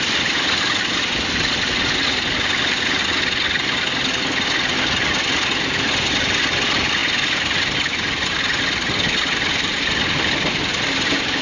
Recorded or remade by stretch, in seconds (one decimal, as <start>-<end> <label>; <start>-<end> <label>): 0.0-11.4 recorded